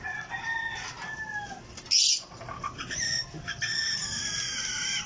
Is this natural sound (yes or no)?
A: yes